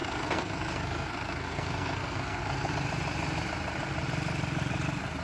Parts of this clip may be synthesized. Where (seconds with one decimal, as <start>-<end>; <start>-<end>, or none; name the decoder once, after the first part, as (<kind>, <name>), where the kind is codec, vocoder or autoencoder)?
0.0-2.7 (codec, SNAC)